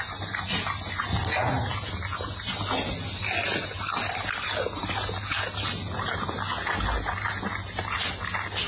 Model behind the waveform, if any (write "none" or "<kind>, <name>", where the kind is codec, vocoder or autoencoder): none